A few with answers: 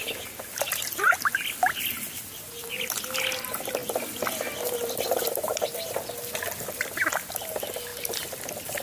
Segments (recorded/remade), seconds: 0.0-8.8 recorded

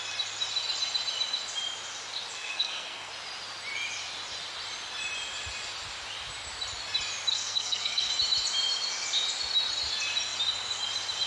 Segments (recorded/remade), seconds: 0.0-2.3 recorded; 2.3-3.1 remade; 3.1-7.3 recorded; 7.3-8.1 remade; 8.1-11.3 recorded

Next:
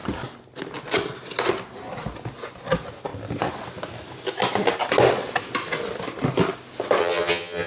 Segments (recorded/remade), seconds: 0.0-7.0 recorded; 7.0-7.7 remade

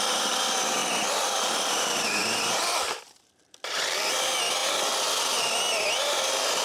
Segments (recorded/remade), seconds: 0.0-0.8 recorded; 0.8-4.1 remade; 4.1-6.6 recorded

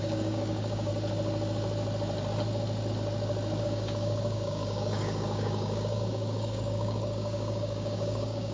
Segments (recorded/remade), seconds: 0.0-0.9 remade; 0.9-3.6 recorded; 3.6-8.5 remade

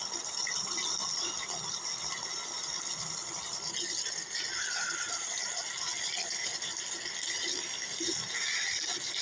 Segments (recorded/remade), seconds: 0.0-9.2 recorded

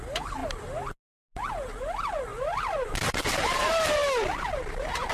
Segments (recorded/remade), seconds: 0.0-2.3 recorded; 2.3-3.6 remade; 3.6-4.0 recorded; 4.0-5.1 remade